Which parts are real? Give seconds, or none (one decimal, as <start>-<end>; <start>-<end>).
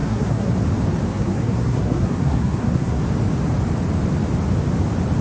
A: 0.5-1.1; 3.0-5.2